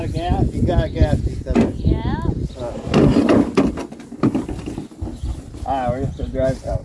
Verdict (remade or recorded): recorded